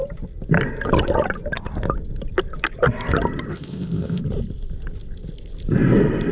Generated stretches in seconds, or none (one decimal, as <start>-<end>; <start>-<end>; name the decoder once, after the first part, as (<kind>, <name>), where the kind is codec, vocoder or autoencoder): 3.5-4.2 (codec, ZipCodec)